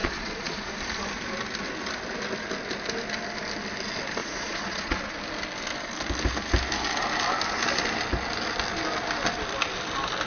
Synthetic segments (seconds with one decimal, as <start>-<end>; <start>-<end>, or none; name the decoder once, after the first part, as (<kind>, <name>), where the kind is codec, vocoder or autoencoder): 0.0-0.7 (vocoder, Vocos); 4.2-5.0